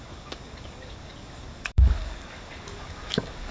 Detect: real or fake fake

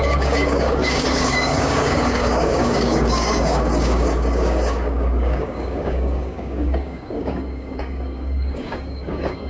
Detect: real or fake fake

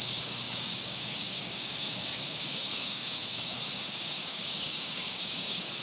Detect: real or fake fake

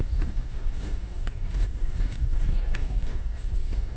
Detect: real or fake fake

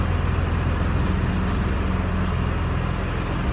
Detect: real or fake real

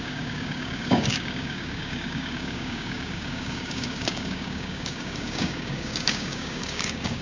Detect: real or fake fake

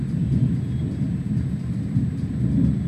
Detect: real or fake real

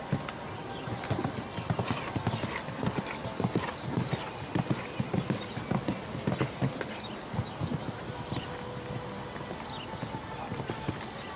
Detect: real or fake real